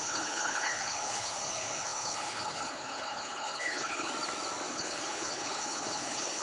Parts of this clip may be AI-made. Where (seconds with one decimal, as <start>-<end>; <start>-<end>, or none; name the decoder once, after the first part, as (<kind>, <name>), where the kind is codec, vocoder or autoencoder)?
0.0-4.1 (codec, HILCodec); 4.7-6.4